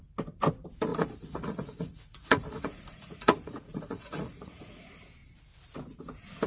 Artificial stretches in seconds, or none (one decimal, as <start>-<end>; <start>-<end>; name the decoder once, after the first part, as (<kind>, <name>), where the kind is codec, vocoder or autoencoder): 0.9-4.8 (vocoder, Vocos)